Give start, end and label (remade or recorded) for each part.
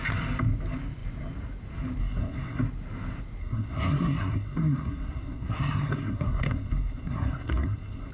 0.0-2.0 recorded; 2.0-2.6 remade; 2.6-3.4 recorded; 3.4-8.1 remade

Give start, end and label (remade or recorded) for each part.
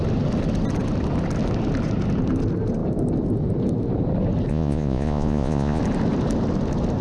0.0-4.5 recorded; 4.5-5.8 remade; 5.8-7.0 recorded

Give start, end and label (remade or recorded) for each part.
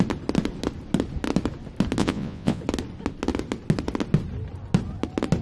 0.0-2.0 recorded; 2.0-2.6 remade; 2.6-5.4 recorded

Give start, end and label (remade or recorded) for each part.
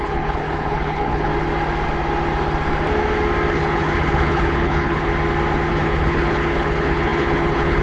0.0-1.3 remade; 1.3-3.5 recorded; 3.5-5.1 remade; 5.1-5.7 recorded; 5.7-7.8 remade